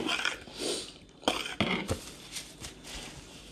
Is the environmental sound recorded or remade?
recorded